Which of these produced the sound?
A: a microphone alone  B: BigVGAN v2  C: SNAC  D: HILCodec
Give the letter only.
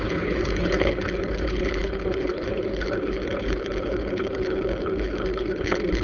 D